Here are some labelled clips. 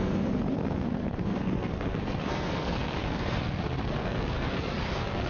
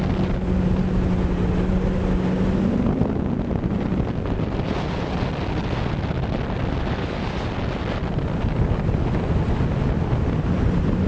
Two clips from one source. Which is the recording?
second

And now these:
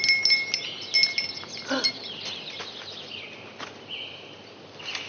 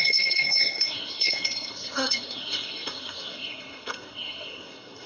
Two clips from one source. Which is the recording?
first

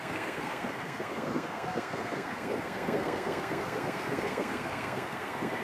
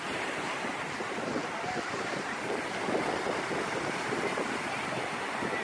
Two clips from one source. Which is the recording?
second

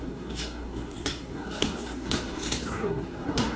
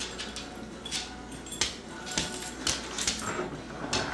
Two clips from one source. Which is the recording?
second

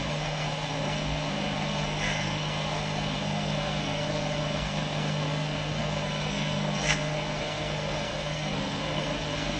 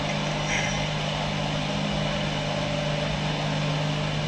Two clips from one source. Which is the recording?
second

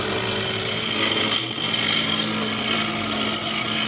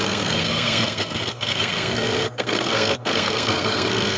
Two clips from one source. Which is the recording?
first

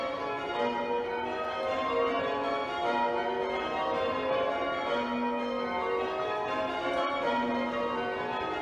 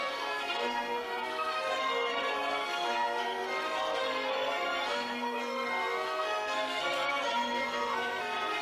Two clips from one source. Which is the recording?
first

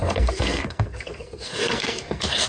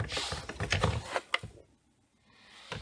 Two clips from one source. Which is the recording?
second